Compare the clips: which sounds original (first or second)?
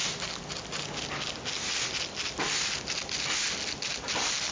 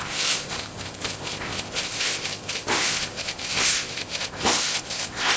first